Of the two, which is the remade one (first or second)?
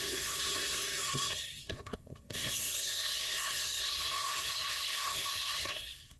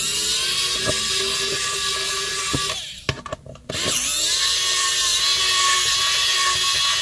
first